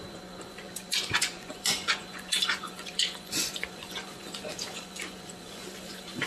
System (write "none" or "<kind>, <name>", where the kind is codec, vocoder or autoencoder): vocoder, Vocos